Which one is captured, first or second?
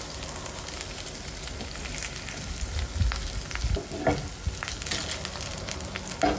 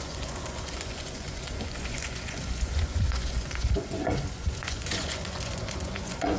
first